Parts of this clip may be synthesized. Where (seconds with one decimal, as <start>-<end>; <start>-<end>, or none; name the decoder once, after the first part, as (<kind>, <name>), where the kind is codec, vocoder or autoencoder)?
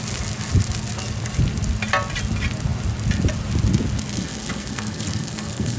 4.1-5.8 (codec, SNAC)